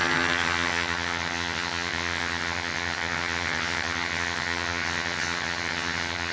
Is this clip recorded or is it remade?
remade